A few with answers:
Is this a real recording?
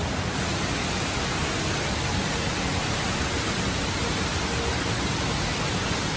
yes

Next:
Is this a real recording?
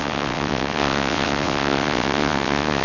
no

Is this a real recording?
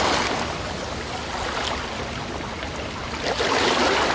yes